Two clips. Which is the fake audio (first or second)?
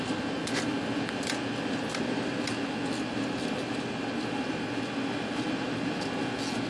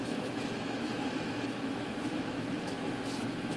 second